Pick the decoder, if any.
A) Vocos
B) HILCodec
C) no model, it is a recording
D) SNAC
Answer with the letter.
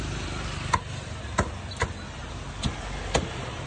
C